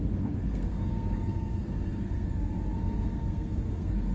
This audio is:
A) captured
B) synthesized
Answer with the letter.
B